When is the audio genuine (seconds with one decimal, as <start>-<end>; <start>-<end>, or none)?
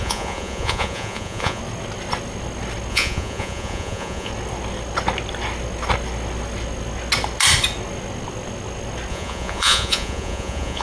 1.6-2.9; 4.3-9.1